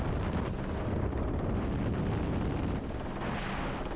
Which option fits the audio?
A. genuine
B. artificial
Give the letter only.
A